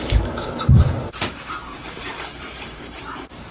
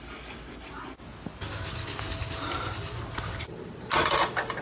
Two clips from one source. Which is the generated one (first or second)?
first